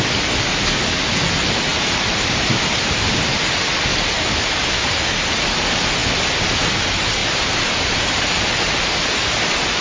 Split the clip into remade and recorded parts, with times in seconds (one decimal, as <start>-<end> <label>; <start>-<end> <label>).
0.0-1.7 recorded; 1.7-3.4 remade; 3.4-7.2 recorded; 7.2-8.2 remade; 8.2-9.8 recorded